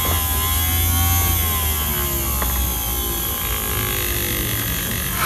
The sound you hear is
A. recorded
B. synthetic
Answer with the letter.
A